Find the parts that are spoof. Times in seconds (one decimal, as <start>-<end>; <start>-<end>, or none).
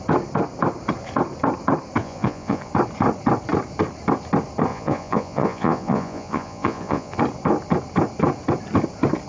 2.0-2.7; 4.7-7.2